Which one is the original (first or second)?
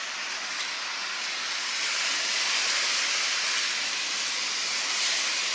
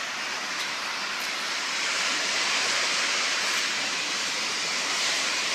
first